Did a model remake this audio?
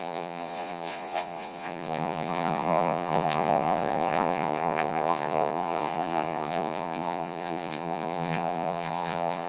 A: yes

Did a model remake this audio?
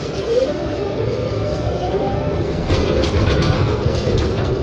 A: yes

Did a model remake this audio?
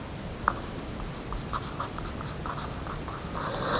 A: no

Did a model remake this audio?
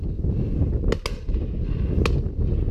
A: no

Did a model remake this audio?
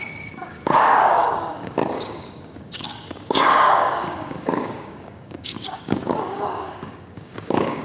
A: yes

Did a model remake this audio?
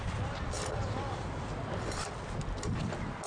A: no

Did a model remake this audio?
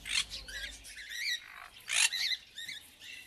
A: no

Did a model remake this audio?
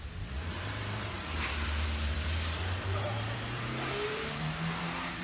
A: yes